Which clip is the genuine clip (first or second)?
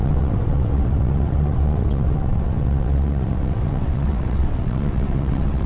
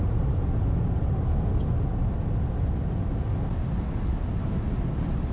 second